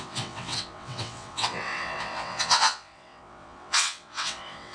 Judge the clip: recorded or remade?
remade